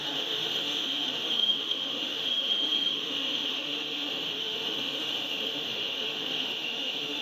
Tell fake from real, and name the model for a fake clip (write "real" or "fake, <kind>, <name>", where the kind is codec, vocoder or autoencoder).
fake, autoencoder, DAC-VAE